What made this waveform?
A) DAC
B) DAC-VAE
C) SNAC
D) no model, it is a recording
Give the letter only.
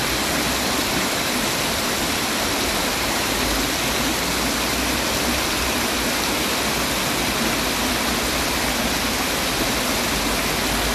D